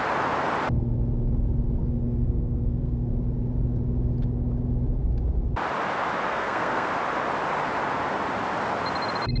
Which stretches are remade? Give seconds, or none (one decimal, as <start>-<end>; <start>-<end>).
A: 1.8-3.1; 6.3-6.9